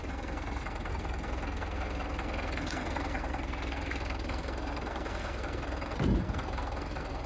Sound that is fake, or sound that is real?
fake